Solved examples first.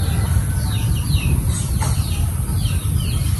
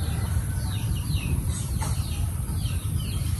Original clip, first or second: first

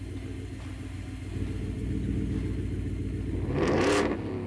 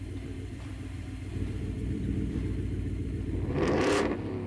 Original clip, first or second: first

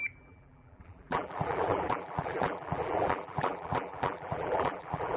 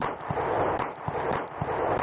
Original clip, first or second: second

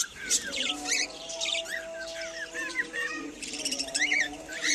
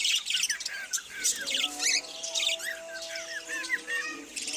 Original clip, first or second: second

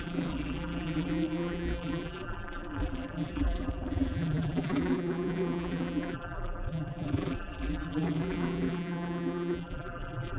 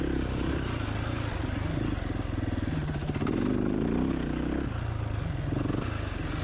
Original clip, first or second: second